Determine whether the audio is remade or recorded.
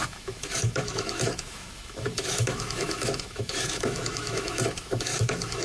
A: remade